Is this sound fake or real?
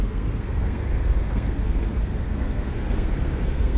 fake